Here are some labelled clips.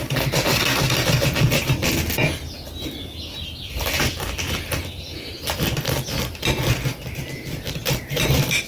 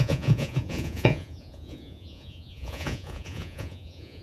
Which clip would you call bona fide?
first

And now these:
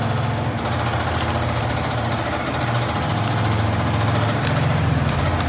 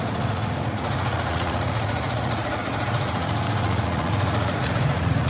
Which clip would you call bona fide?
first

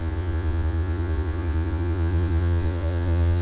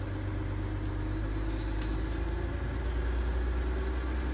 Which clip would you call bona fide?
second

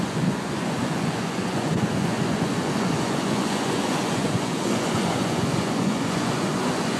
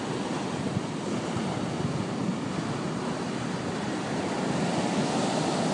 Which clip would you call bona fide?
second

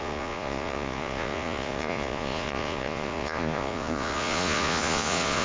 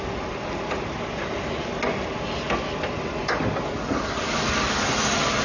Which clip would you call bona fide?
second